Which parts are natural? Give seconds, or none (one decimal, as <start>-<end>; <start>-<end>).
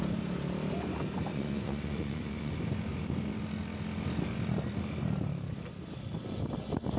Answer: 0.0-1.3; 2.5-7.0